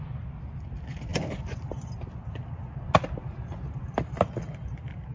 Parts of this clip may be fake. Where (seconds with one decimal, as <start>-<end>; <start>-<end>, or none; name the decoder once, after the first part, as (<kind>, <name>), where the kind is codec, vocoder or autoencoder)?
none